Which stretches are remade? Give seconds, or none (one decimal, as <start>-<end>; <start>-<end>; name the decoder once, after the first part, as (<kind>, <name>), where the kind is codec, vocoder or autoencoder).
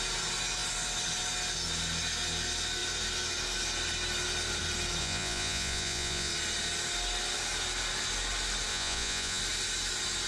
5.0-6.3 (vocoder, Vocos); 8.7-9.4